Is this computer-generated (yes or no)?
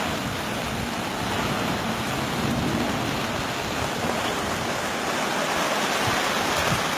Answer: no